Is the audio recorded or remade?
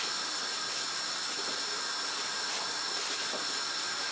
remade